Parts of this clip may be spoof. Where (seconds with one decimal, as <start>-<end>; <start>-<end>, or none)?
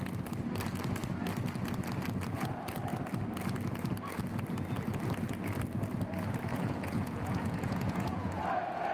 6.5-8.4